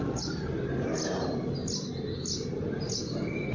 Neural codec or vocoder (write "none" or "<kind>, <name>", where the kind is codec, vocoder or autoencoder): none